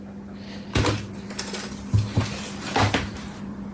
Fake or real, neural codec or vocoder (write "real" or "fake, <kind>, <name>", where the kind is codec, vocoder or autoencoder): real